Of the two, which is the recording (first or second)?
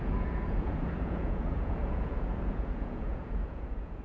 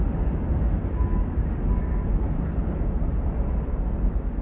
second